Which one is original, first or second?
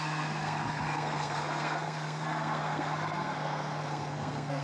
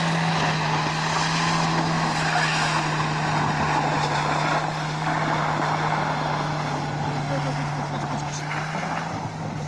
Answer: second